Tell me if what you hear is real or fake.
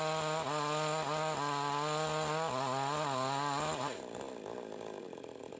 real